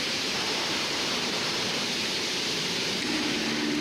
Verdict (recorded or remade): remade